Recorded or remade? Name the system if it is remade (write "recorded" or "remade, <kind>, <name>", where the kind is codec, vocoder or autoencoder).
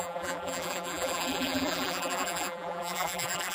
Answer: remade, vocoder, BigVGAN v2